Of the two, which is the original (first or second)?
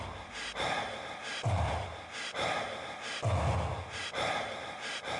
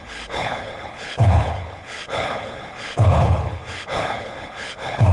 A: first